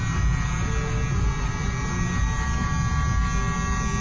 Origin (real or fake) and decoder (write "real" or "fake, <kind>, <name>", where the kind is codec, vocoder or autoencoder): real